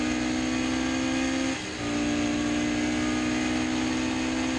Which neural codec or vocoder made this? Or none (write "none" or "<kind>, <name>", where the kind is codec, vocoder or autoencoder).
none